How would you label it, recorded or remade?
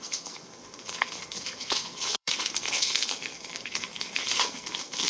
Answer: remade